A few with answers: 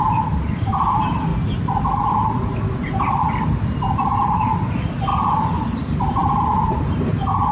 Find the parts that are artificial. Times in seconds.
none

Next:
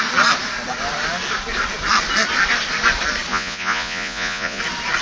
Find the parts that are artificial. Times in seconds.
3.3-4.6 (vocoder, Vocos)

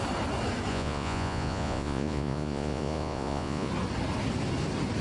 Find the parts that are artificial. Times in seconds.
0.7-3.7 (vocoder, Vocos)

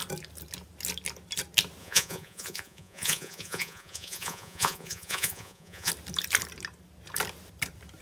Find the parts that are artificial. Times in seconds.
1.8-5.9 (vocoder, Vocos)

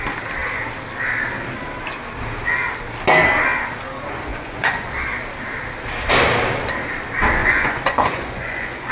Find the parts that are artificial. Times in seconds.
4.3-4.9 (vocoder, Vocos); 7.4-8.9

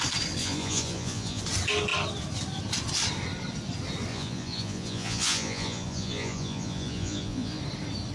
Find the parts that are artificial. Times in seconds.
0.4-1.4 (vocoder, Vocos); 4.1-7.6